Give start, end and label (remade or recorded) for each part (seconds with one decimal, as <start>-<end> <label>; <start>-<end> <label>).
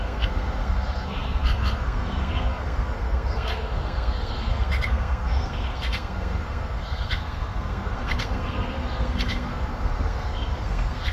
0.0-11.1 remade